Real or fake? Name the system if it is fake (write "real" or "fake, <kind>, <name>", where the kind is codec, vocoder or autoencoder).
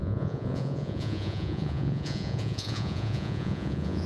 fake, vocoder, Vocos